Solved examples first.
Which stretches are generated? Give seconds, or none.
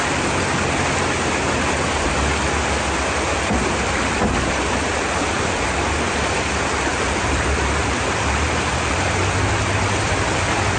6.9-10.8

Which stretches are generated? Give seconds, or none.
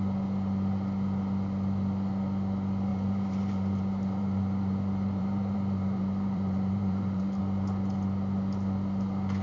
2.9-7.4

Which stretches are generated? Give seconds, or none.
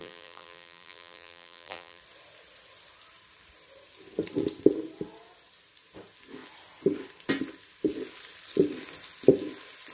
0.0-2.0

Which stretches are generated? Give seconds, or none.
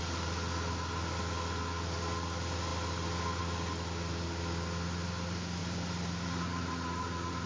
5.6-7.5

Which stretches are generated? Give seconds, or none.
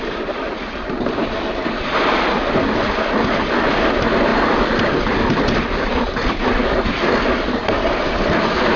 none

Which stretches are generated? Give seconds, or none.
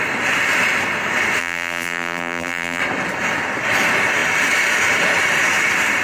1.4-2.8